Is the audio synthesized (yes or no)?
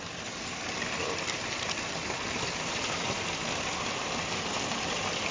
yes